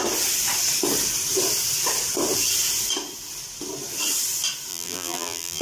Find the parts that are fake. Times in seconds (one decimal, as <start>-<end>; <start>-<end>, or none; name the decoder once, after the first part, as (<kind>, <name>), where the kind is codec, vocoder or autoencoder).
4.7-5.6 (vocoder, BigVGAN v2)